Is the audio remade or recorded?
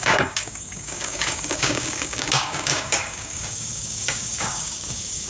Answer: remade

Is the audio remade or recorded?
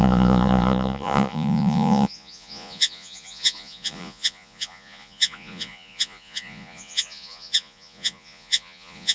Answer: remade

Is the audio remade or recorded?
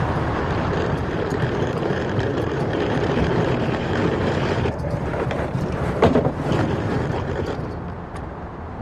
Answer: remade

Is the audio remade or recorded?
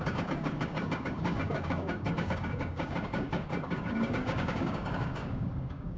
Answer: remade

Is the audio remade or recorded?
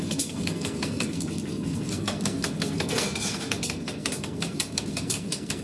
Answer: remade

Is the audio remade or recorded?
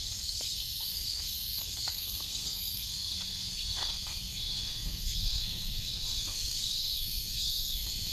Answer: remade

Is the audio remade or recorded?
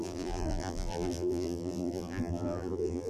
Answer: remade